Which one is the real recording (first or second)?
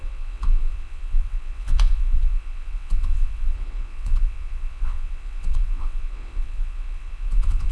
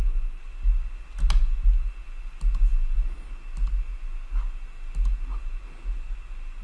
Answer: second